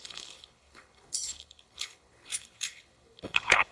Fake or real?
fake